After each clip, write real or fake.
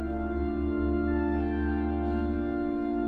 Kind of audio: real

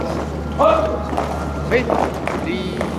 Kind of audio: real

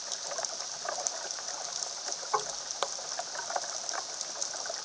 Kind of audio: real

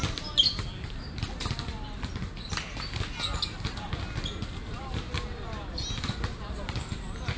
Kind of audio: real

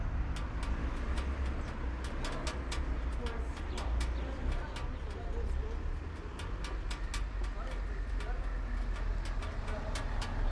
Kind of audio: real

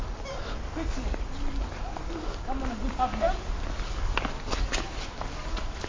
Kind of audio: real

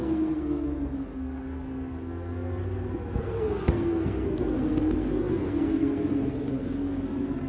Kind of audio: fake